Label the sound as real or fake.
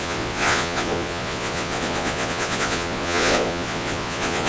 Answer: fake